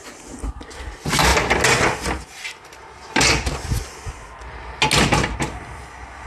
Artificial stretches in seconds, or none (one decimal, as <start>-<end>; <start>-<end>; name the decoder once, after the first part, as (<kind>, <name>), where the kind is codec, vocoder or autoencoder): none